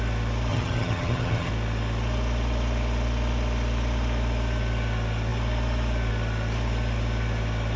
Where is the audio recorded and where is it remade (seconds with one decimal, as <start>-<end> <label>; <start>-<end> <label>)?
0.0-0.5 recorded; 0.5-1.5 remade; 1.5-7.8 recorded